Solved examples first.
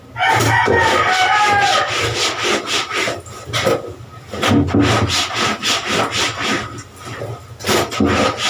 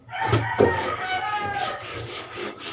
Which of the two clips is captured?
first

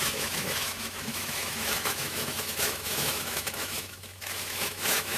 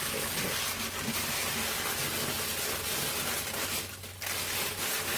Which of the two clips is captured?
second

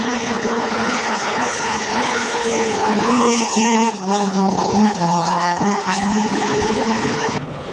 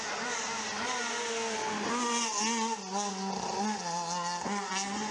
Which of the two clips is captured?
second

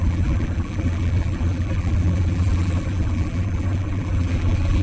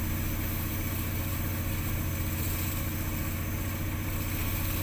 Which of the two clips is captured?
second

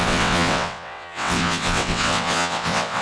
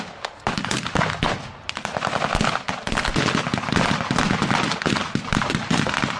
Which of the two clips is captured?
second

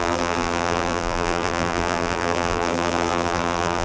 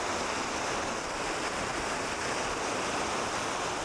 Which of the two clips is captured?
second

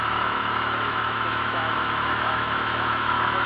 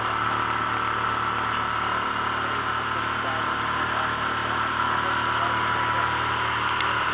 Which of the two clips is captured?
second